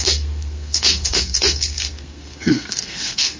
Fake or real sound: fake